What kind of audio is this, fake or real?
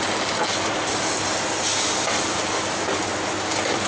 real